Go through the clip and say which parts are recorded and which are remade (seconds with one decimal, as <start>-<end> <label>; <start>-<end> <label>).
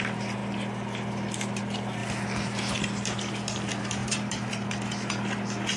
0.0-4.0 recorded; 4.0-4.5 remade; 4.5-5.8 recorded